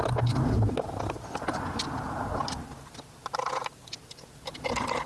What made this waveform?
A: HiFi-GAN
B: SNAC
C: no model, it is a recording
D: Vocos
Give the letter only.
C